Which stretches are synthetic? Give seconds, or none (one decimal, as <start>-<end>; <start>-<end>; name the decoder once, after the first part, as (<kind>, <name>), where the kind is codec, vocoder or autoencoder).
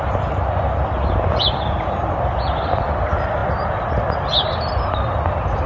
none